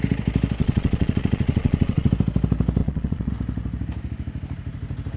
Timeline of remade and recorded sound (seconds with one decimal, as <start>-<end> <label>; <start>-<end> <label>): 0.0-0.6 recorded; 0.6-2.1 remade; 2.1-2.8 recorded; 2.8-3.3 remade; 3.3-5.2 recorded